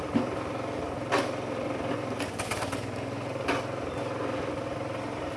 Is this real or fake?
real